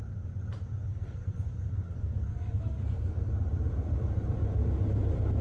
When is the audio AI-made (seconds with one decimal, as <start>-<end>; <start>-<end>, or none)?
0.9-3.3